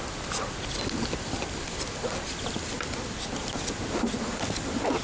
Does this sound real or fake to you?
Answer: real